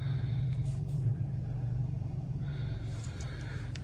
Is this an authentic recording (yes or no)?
no